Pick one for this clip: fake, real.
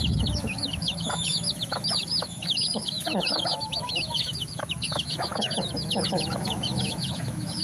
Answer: fake